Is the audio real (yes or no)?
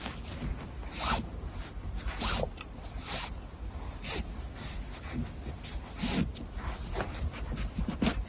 yes